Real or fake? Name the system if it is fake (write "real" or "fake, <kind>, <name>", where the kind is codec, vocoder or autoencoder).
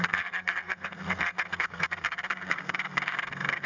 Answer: fake, codec, SNAC